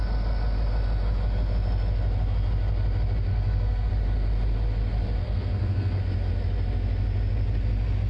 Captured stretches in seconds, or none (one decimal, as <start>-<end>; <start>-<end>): 0.0-3.3; 3.9-5.2; 6.0-8.1